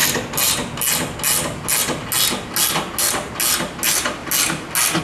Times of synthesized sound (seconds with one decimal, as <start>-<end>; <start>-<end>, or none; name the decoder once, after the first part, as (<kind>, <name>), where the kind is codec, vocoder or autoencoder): none